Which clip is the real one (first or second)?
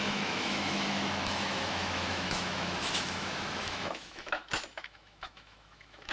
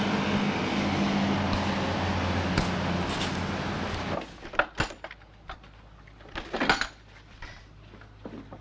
second